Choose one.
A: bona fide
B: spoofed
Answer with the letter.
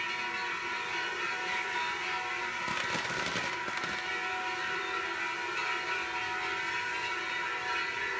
A